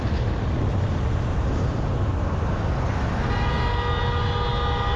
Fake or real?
real